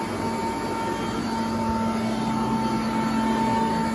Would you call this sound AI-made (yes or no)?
no